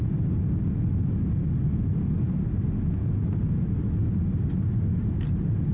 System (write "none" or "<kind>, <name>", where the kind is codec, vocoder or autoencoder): none